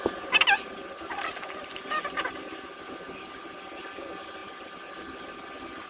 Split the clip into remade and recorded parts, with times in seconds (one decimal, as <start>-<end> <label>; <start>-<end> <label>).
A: 0.0-5.9 recorded